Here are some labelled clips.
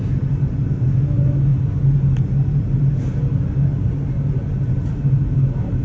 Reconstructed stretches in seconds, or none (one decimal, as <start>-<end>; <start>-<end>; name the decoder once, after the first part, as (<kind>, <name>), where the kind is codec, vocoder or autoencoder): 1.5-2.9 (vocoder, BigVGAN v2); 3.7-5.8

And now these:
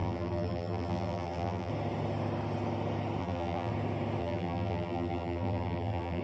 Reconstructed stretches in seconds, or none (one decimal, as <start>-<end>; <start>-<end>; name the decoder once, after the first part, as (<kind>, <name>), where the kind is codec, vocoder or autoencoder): 0.0-1.7 (vocoder, BigVGAN v2); 3.2-3.7; 4.2-6.2

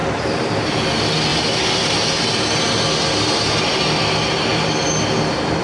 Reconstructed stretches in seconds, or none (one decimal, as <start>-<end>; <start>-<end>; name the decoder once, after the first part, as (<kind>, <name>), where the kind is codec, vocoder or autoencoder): 0.0-0.8 (vocoder, BigVGAN v2); 4.5-5.6

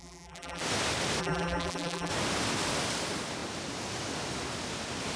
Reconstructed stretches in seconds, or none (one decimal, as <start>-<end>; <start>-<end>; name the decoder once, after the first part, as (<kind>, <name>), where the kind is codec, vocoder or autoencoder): 0.0-0.6 (vocoder, BigVGAN v2); 1.2-2.1

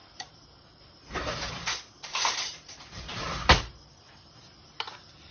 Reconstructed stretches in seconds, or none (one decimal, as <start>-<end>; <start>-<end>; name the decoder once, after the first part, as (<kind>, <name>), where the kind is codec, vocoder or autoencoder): 0.0-3.2 (vocoder, BigVGAN v2)

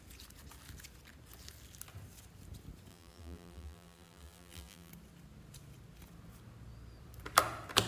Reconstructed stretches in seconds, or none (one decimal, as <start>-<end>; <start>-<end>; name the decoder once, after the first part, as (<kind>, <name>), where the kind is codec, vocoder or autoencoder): 2.9-4.9 (vocoder, BigVGAN v2)

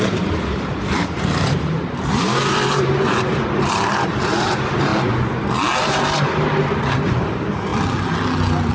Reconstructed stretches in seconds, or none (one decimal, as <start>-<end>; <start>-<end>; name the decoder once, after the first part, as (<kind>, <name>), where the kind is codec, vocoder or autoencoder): 0.0-4.9 (vocoder, BigVGAN v2); 5.8-7.7